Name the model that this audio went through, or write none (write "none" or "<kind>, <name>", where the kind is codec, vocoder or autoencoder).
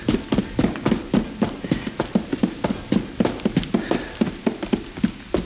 none